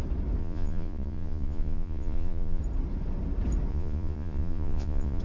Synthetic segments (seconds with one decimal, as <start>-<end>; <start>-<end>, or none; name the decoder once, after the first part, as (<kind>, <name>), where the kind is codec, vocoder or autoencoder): 0.4-2.6 (vocoder, Vocos); 3.7-5.2